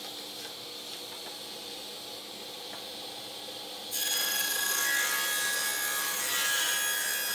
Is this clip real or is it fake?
real